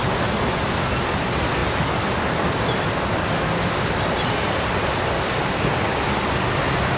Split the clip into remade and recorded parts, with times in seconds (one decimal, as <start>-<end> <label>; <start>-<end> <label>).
0.0-7.0 recorded